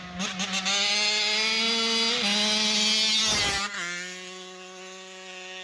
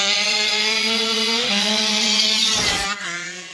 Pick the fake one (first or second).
second